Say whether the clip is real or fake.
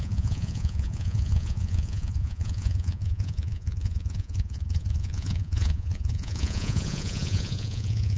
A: fake